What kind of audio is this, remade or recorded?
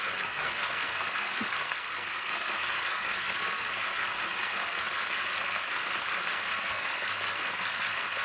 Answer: remade